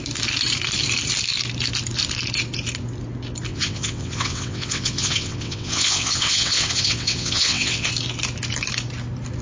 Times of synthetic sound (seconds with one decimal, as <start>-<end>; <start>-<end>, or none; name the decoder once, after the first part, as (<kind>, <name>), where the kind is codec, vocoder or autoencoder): 3.5-7.9 (vocoder, WaveNeXt)